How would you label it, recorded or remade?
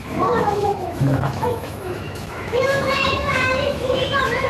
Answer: remade